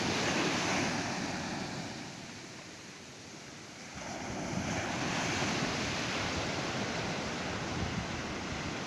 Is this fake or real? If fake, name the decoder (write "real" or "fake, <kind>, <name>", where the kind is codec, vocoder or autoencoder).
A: real